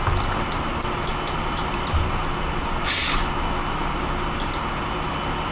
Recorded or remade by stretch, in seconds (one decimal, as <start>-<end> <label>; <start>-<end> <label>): 0.0-1.6 recorded; 1.6-2.1 remade; 2.1-5.5 recorded